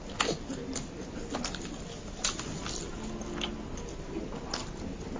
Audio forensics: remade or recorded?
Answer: recorded